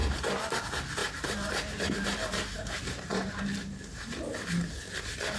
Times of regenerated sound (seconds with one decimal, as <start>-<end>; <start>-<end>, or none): 0.0-0.6; 1.0-4.2